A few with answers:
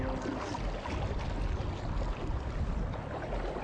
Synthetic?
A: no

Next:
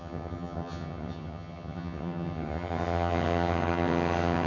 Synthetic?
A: yes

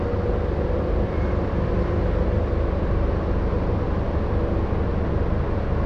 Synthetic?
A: no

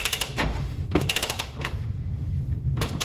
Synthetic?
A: yes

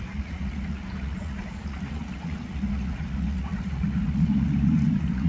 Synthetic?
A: yes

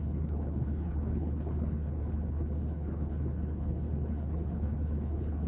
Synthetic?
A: yes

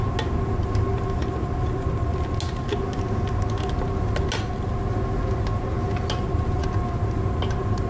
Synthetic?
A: no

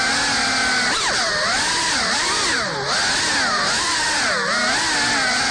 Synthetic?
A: no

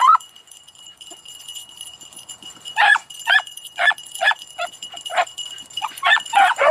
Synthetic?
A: yes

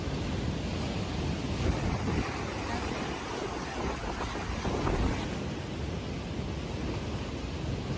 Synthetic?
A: no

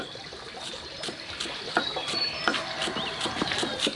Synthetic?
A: no